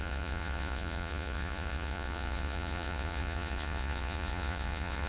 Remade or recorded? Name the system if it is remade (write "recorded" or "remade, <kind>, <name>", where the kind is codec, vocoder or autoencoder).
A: remade, vocoder, Vocos